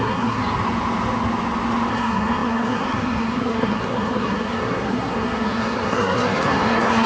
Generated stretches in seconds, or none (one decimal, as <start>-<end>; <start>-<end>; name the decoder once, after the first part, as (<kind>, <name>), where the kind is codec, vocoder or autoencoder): 0.0-0.4 (codec, SNAC); 1.9-7.1